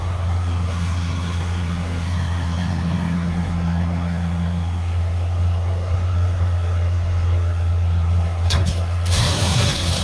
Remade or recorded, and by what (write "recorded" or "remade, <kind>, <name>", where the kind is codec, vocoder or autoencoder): remade, codec, SNAC